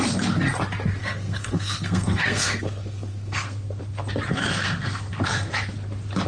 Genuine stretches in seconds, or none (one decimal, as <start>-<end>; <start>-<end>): 0.0-1.0; 3.8-4.3; 5.5-6.3